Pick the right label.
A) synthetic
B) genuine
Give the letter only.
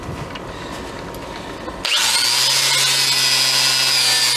B